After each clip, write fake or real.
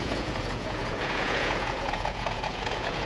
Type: fake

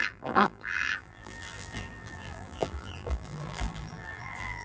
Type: fake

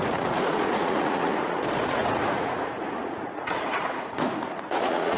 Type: fake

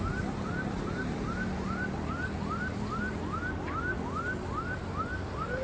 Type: real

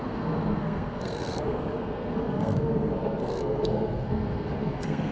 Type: fake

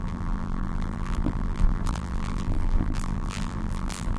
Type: fake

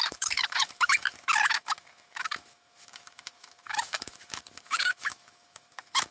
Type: fake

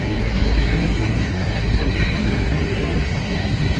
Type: fake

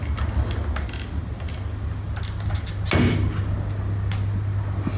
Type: real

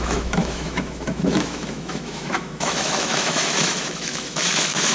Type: fake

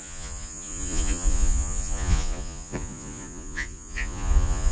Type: fake